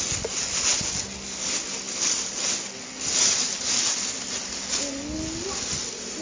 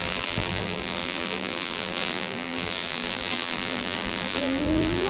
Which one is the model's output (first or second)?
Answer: second